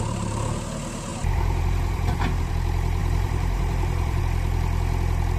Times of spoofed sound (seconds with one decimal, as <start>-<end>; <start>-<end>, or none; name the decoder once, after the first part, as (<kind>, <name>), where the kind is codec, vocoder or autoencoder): 1.1-2.5 (vocoder, BigVGAN v2); 3.0-4.2